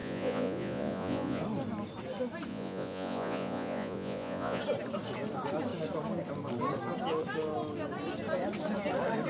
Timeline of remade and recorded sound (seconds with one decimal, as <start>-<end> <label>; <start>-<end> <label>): 0.0-1.4 remade; 1.4-2.5 recorded; 2.5-4.6 remade; 4.6-9.3 recorded